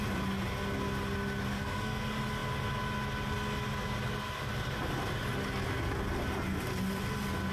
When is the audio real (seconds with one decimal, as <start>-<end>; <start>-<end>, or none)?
0.0-1.5; 2.0-7.5

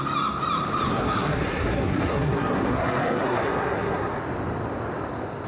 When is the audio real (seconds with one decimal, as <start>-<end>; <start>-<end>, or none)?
0.0-0.9; 4.2-5.5

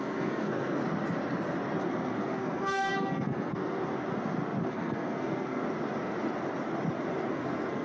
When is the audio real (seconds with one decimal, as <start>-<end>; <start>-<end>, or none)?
0.8-1.8; 3.9-4.7; 5.6-7.3

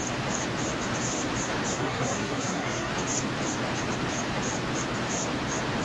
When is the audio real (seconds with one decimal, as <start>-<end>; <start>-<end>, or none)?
0.0-1.7; 2.9-5.8